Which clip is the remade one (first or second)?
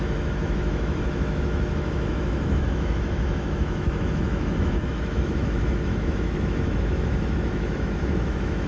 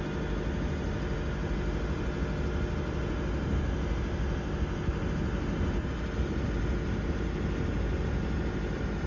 first